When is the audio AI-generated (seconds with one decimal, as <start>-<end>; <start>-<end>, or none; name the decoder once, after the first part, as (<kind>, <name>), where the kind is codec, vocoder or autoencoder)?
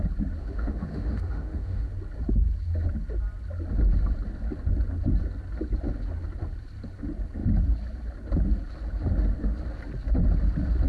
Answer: 0.4-1.9 (autoencoder, DAC-VAE)